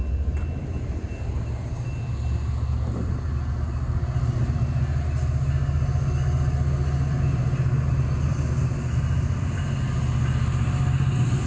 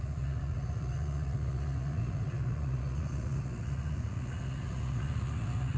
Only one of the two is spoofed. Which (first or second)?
second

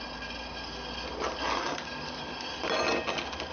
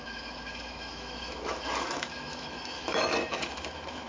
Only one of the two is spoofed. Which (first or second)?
second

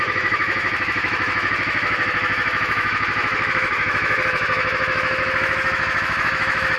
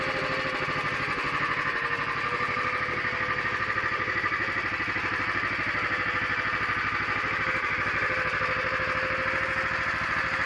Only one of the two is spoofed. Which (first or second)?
first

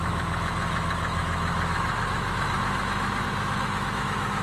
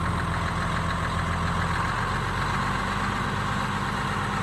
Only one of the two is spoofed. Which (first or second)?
first